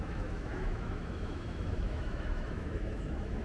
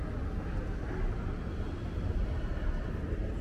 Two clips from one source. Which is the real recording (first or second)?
second